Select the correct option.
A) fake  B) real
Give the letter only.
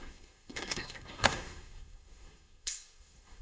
A